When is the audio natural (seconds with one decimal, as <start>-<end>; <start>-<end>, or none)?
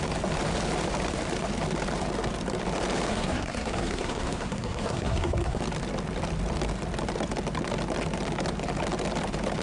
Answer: 0.0-3.1; 5.6-9.6